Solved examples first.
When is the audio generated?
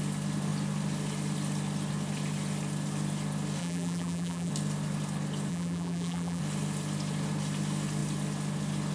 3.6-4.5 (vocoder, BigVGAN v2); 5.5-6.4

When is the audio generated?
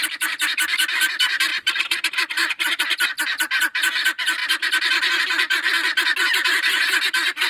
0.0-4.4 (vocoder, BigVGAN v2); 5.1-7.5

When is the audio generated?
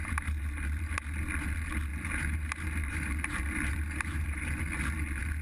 0.0-1.2 (vocoder, BigVGAN v2); 1.9-4.6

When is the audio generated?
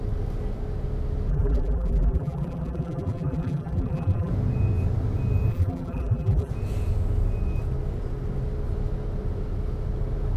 1.3-4.3 (vocoder, BigVGAN v2); 5.5-6.5